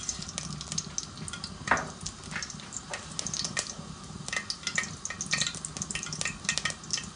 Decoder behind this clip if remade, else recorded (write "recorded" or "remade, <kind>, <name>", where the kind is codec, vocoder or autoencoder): recorded